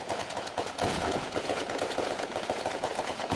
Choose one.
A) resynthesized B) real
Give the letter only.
A